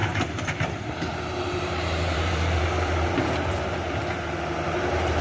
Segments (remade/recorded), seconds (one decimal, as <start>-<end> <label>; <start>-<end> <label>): 0.0-5.2 remade